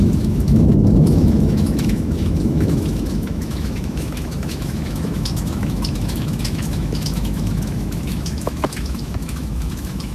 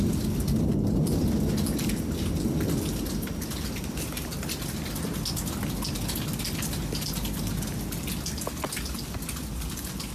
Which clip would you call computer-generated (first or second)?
first